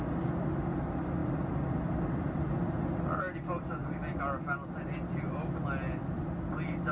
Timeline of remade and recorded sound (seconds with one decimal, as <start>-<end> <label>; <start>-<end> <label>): 0.0-6.9 recorded